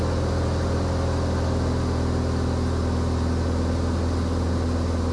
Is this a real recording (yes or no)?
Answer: yes